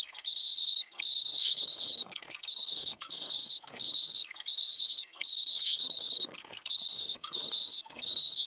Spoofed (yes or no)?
yes